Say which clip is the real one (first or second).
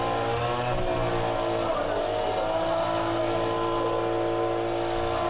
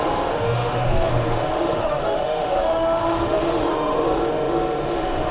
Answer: first